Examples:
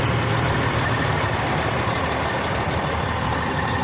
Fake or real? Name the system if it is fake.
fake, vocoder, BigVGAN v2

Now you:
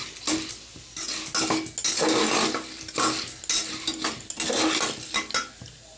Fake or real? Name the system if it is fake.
real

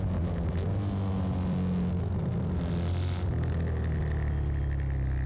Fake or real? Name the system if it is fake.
real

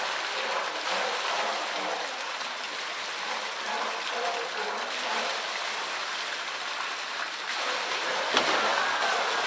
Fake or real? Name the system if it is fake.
fake, vocoder, BigVGAN v2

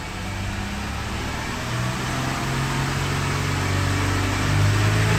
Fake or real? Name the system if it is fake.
real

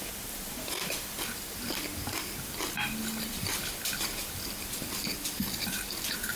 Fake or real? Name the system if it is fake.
fake, vocoder, BigVGAN v2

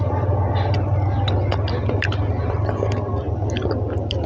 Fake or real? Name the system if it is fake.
real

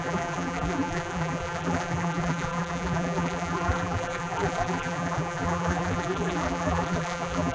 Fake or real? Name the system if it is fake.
fake, vocoder, BigVGAN v2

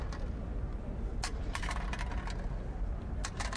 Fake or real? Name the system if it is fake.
real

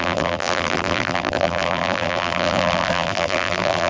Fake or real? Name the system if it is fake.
fake, vocoder, BigVGAN v2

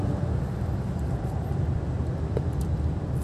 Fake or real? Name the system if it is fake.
fake, vocoder, BigVGAN v2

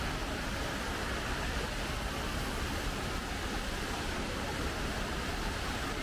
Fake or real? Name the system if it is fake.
fake, vocoder, BigVGAN v2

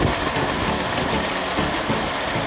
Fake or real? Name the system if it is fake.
real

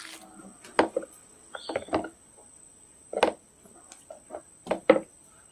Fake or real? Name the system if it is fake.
real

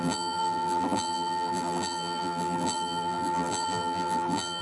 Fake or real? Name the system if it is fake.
fake, vocoder, BigVGAN v2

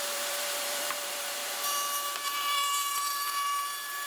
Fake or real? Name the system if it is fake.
fake, vocoder, BigVGAN v2